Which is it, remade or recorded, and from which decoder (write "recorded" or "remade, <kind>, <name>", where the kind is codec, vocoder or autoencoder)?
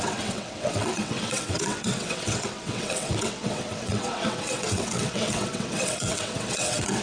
remade, vocoder, WaveNeXt